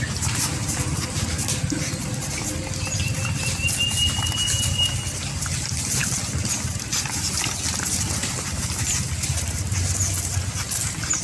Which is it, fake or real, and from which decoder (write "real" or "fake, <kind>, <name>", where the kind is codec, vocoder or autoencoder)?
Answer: real